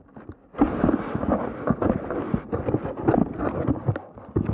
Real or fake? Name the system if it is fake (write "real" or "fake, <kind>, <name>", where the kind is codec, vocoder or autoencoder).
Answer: real